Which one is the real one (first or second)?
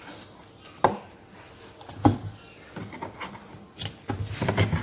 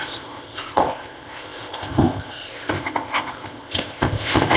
first